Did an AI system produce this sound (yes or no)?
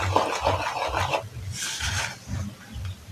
no